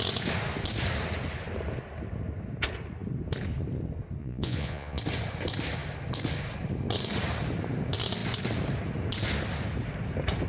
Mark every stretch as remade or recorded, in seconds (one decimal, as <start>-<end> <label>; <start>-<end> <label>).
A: 0.0-4.2 recorded; 4.2-5.0 remade; 5.0-10.5 recorded